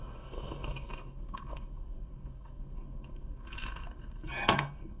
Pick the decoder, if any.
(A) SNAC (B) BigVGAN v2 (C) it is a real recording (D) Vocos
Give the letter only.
A